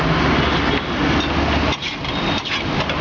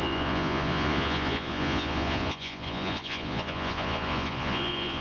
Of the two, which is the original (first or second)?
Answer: first